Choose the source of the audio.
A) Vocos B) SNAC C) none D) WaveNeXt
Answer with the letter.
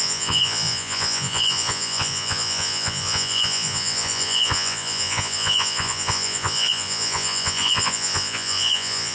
A